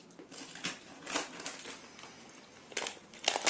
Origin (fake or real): real